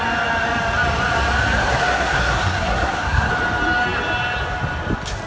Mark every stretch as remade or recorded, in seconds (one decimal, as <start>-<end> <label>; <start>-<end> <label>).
0.0-1.7 recorded; 1.7-3.3 remade; 3.3-5.3 recorded